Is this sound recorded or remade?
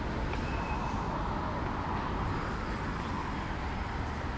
recorded